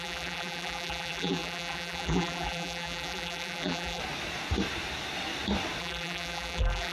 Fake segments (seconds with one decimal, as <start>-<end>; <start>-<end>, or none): 0.0-4.0; 5.8-6.9